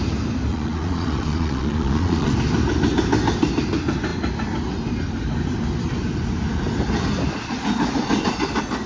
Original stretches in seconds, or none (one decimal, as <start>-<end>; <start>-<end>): 0.0-0.5; 2.3-8.9